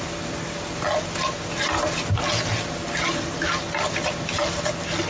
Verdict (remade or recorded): recorded